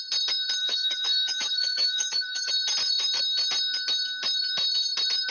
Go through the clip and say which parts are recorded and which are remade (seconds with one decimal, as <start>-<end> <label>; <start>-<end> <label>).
0.0-0.6 recorded; 0.6-2.5 remade; 2.5-5.3 recorded